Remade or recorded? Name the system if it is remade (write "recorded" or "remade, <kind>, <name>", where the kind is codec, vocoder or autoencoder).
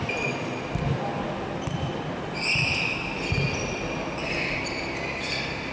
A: recorded